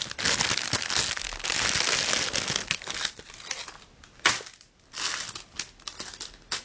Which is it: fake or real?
real